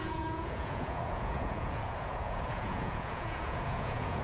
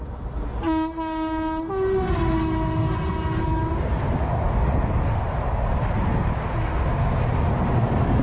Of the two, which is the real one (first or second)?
second